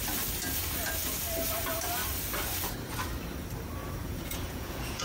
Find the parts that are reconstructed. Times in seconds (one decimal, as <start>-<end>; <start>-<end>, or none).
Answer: 3.8-5.0